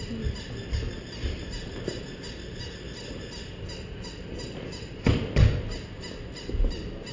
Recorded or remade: recorded